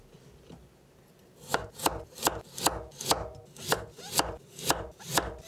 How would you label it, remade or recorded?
recorded